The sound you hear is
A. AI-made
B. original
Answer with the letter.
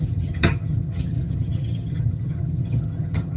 A